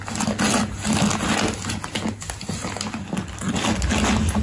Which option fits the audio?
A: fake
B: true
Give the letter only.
B